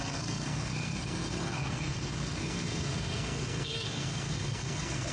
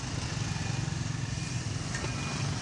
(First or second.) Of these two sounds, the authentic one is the second